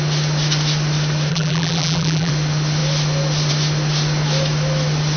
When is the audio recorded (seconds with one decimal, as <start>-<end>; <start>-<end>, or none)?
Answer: 0.0-1.3; 2.3-5.2